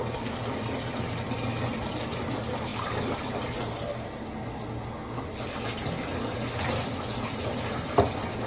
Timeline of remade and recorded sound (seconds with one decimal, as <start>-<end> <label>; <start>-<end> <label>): 0.0-8.5 recorded